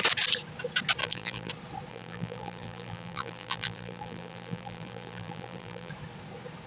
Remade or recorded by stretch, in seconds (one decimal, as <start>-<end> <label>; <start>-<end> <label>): 0.0-1.0 recorded; 1.0-1.5 remade; 1.5-1.9 recorded; 1.9-5.9 remade; 5.9-6.7 recorded